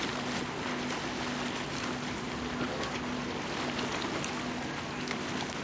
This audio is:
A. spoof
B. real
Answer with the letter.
B